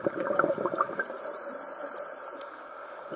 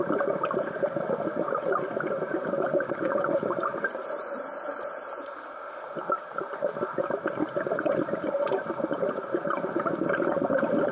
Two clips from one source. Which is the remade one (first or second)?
first